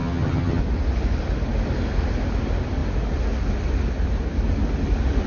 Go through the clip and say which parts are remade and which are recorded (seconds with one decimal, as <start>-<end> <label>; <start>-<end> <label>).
0.0-0.6 remade; 0.6-5.3 recorded